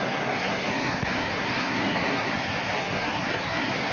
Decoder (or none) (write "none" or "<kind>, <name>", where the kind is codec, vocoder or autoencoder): codec, SNAC